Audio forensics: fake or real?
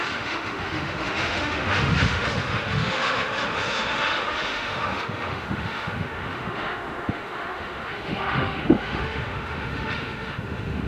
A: fake